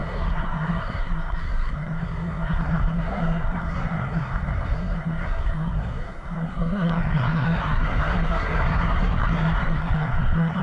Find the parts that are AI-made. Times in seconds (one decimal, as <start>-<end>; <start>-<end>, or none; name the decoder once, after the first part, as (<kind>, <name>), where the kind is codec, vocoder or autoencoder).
0.0-10.6 (codec, SNAC)